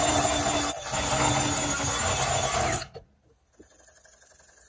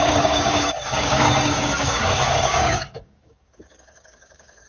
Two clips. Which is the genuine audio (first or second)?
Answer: first